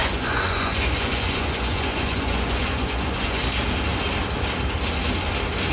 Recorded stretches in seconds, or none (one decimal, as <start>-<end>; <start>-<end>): 3.4-5.7